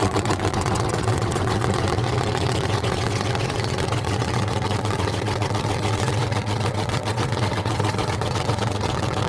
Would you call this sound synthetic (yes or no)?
yes